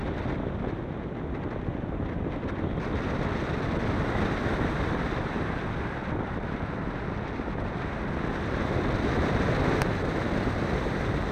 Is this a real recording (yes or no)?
yes